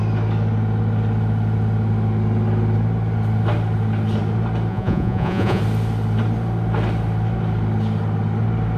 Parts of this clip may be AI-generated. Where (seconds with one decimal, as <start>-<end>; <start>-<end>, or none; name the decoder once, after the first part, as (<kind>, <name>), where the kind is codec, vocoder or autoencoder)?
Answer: 4.7-5.6 (vocoder, Vocos)